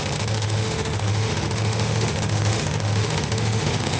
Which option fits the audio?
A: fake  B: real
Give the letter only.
A